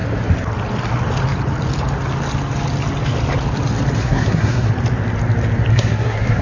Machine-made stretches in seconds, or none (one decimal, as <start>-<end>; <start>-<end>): 4.0-4.7; 5.7-6.4

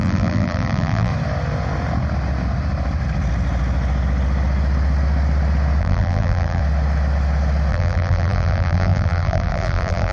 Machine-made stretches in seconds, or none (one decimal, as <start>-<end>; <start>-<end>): 0.0-1.1; 5.8-6.6; 7.7-10.1

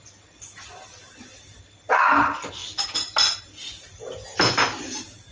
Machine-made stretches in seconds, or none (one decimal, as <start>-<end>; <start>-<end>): none

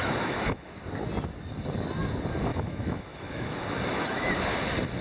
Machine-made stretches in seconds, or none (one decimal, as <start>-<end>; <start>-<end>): 0.0-0.8; 2.5-4.3

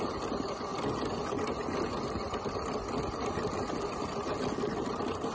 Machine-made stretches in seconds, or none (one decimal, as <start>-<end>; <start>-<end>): none

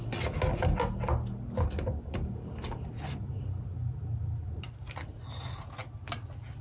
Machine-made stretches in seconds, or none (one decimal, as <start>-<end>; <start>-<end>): none

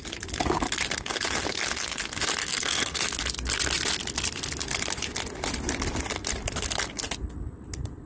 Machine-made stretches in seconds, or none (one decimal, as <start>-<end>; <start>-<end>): 2.4-3.0

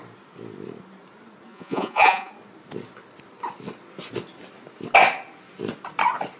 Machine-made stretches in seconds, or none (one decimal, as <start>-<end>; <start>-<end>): 1.5-2.3